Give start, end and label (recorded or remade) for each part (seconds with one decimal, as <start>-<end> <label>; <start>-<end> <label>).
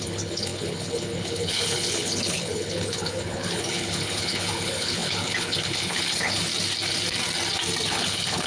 0.0-6.5 remade; 6.5-7.9 recorded; 7.9-8.5 remade